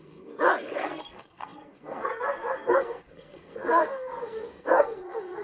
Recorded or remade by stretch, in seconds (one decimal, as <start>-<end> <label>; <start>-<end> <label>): 0.0-5.4 remade